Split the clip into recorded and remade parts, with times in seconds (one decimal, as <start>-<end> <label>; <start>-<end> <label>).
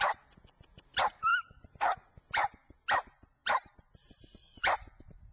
0.0-5.3 recorded